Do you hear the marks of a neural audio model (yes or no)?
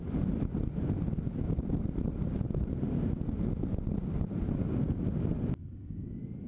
no